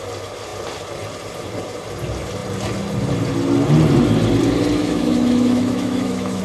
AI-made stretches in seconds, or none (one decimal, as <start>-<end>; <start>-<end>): 4.8-6.4